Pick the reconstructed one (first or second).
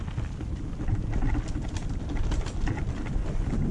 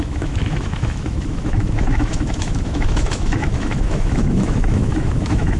second